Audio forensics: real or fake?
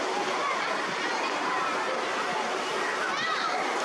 real